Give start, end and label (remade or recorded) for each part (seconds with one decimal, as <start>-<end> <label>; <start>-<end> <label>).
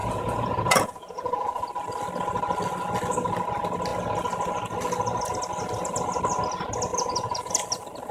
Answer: 0.0-1.7 remade; 1.7-6.9 recorded; 6.9-7.5 remade; 7.5-8.1 recorded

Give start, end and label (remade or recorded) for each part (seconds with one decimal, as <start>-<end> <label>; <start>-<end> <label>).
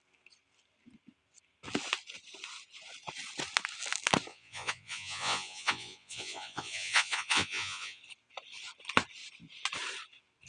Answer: 0.0-4.3 recorded; 4.3-8.0 remade; 8.0-10.5 recorded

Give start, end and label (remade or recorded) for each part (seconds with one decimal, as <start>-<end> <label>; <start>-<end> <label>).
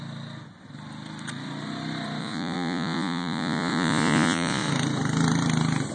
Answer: 0.0-2.2 recorded; 2.2-4.7 remade; 4.7-5.9 recorded